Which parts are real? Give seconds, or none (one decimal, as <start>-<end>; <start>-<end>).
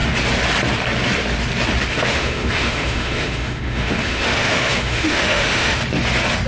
0.0-1.9; 5.8-6.5